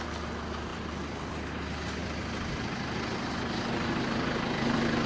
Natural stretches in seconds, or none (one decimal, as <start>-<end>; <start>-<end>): 0.0-5.1